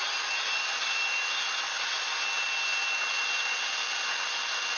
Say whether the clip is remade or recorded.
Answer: recorded